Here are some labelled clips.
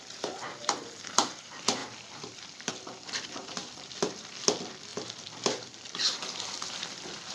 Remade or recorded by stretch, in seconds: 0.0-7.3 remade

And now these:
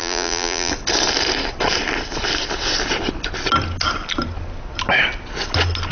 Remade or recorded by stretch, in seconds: 0.0-0.7 remade; 0.7-5.9 recorded

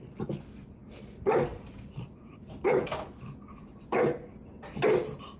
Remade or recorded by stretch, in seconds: 0.0-5.4 recorded

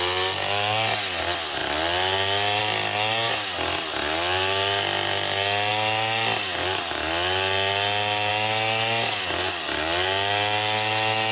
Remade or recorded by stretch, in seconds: 0.0-11.3 recorded